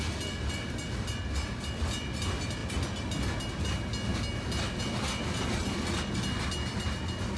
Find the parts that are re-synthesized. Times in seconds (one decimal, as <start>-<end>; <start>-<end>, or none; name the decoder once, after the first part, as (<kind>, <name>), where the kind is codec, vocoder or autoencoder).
none